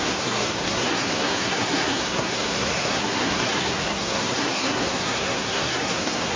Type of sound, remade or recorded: remade